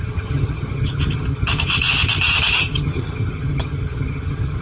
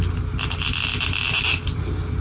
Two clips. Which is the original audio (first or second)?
second